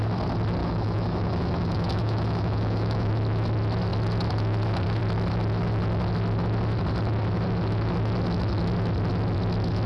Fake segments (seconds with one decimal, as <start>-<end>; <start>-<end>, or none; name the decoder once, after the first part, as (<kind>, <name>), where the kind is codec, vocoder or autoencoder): 0.6-3.1 (autoencoder, DAC-VAE)